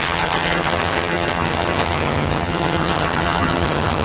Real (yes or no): no